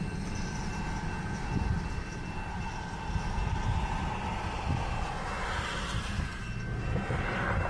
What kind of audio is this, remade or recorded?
recorded